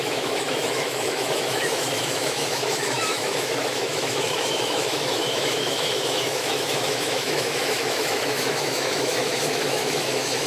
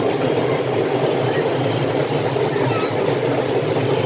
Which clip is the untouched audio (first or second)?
second